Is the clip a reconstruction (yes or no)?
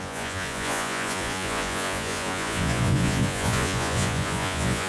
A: yes